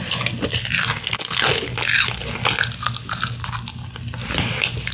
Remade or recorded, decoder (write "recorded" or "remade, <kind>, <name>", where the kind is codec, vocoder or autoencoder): recorded